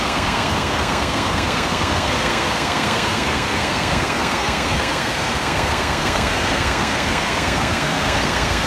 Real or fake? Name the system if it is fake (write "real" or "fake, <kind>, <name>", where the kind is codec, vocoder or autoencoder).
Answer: fake, codec, SNAC